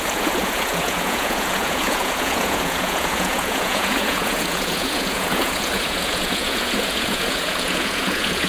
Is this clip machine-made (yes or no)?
yes